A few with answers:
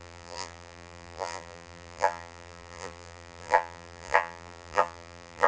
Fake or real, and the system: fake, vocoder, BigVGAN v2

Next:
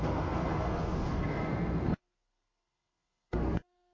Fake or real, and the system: fake, codec, SNAC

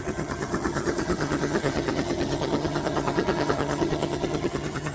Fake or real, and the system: fake, vocoder, HiFi-GAN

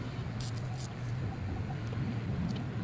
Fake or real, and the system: real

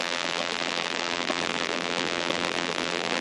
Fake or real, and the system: fake, vocoder, BigVGAN v2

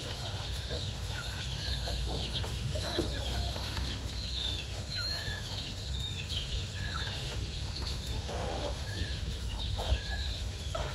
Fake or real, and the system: fake, autoencoder, DAC-VAE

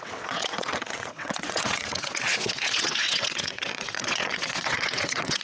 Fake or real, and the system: fake, vocoder, WaveNeXt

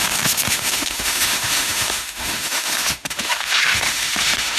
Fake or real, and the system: fake, autoencoder, DAC-VAE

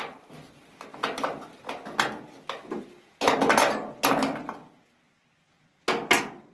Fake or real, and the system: real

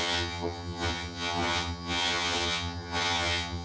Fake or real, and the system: fake, vocoder, HiFi-GAN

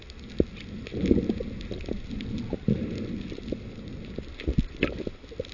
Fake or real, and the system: real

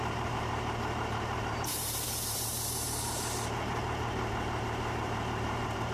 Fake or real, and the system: fake, vocoder, BigVGAN v2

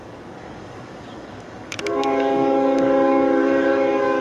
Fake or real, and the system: fake, codec, DAC